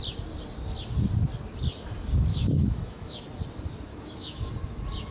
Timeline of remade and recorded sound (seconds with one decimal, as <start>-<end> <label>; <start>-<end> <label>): 0.0-2.3 recorded; 2.3-3.2 remade; 3.2-3.9 recorded; 3.9-4.5 remade; 4.5-5.1 recorded